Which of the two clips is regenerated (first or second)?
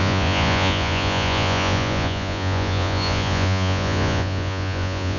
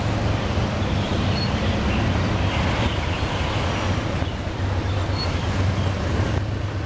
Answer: first